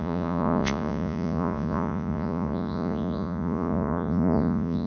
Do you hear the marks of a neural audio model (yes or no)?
yes